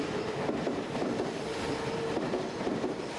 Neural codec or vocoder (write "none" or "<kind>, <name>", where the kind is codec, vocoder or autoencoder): none